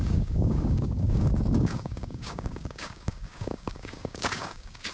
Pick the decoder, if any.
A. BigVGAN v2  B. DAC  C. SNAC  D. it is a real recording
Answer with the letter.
B